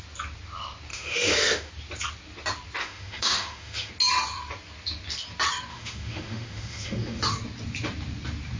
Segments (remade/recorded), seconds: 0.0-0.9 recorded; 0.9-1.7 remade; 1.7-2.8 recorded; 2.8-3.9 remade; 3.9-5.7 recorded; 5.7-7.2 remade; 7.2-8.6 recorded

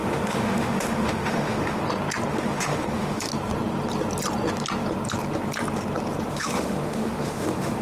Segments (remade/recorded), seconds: 0.0-1.8 remade; 1.8-2.3 recorded; 2.3-3.3 remade; 3.3-6.3 recorded; 6.3-7.8 remade

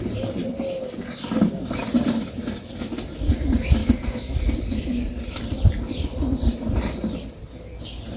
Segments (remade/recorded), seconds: 0.0-3.8 recorded; 3.8-4.4 remade; 4.4-8.2 recorded

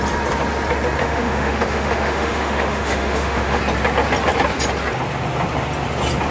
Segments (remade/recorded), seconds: 0.0-1.0 recorded; 1.0-3.6 remade; 3.6-6.3 recorded

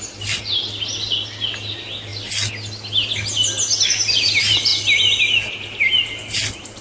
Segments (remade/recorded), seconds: 0.0-6.8 recorded

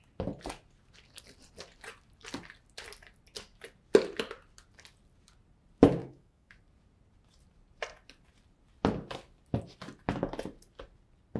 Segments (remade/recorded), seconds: 0.0-6.0 recorded; 6.0-6.5 remade; 6.5-11.4 recorded